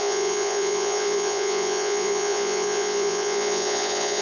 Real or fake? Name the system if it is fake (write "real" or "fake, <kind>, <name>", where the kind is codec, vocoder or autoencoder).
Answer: fake, vocoder, Vocos